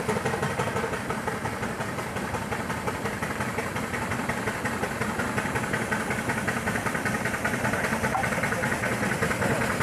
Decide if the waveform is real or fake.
fake